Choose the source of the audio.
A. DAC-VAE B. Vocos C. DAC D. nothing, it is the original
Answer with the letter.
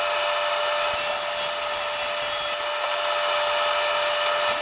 D